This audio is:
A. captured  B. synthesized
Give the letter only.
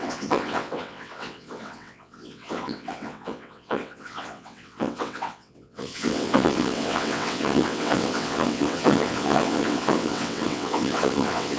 B